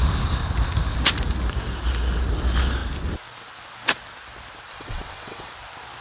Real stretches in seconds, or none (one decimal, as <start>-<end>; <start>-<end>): 0.0-4.7; 5.5-6.0